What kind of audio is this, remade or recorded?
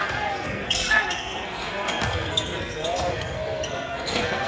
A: remade